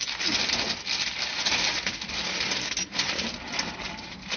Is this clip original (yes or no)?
yes